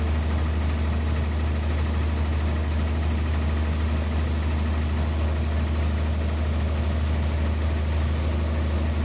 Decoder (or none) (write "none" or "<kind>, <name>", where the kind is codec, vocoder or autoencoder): none